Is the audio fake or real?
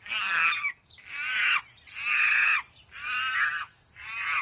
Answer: real